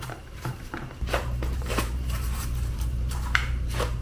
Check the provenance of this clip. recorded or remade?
remade